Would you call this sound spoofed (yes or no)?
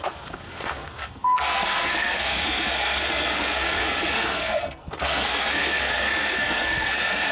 yes